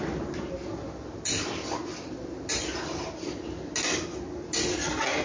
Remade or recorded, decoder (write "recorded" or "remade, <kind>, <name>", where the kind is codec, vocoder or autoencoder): recorded